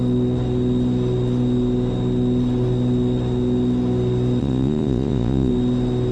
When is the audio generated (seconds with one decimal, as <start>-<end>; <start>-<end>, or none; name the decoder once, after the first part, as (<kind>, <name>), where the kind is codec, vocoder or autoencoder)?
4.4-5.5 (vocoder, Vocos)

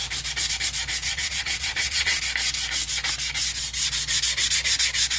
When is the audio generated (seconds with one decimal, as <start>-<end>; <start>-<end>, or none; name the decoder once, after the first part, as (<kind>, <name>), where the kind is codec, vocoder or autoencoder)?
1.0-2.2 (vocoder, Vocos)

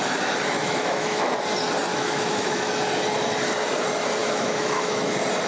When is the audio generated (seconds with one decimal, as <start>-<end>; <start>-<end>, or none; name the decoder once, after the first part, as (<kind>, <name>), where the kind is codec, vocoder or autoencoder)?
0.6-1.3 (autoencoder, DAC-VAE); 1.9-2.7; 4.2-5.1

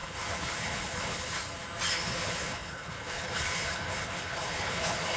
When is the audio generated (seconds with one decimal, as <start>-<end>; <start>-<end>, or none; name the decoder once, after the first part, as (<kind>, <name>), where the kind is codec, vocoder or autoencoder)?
0.0-1.4 (codec, HILCodec); 1.9-5.2

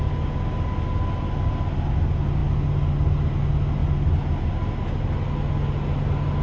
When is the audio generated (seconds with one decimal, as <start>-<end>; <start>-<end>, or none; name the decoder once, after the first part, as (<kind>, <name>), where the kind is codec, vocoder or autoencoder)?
none

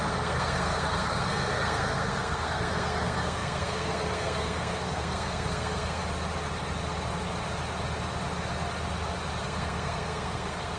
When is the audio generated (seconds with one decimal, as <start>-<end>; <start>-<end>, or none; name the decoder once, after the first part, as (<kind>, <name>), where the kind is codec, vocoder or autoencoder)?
0.0-6.0 (codec, SNAC); 9.4-10.8

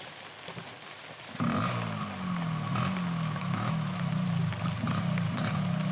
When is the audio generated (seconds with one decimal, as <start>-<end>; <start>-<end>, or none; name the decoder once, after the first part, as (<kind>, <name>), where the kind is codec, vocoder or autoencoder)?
3.4-4.1 (autoencoder, DAC-VAE)

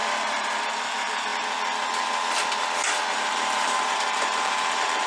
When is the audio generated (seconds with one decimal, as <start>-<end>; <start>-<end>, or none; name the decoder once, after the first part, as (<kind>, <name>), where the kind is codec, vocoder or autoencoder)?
0.0-1.3 (vocoder, BigVGAN v2); 3.1-5.1